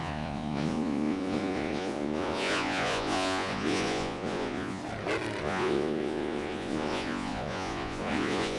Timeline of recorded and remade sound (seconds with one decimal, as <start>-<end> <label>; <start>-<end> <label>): 0.0-4.8 remade; 4.8-5.4 recorded; 5.4-8.6 remade